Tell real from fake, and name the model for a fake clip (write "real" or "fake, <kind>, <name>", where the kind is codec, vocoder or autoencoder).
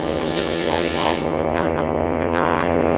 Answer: fake, vocoder, HiFi-GAN